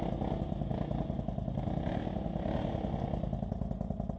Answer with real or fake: real